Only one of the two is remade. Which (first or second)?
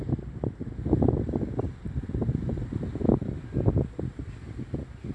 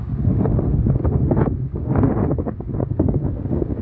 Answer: second